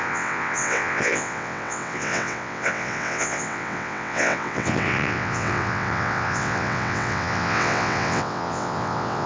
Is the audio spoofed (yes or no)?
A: yes